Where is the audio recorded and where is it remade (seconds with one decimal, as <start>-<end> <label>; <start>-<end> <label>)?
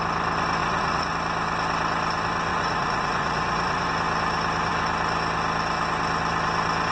0.0-0.6 recorded; 0.6-1.1 remade; 1.1-2.5 recorded; 2.5-3.9 remade; 3.9-6.9 recorded